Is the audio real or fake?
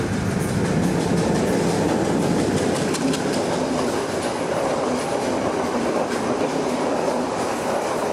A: fake